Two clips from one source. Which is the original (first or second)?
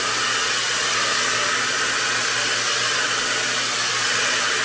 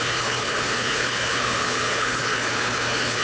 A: first